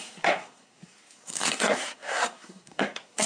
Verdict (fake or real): fake